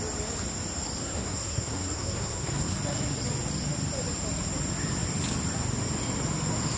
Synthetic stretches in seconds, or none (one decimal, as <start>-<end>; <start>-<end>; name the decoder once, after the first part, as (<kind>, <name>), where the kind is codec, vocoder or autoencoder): 1.0-2.7 (codec, SNAC)